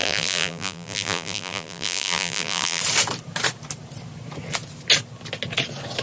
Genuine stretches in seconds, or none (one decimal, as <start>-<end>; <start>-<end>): 2.8-6.0